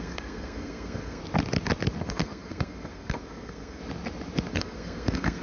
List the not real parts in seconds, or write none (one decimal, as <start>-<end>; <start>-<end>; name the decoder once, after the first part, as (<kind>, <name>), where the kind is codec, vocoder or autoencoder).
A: 0.0-1.2 (codec, SNAC); 2.0-3.8; 4.5-5.4